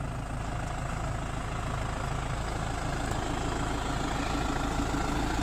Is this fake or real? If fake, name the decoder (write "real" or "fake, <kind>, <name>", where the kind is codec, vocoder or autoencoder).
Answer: real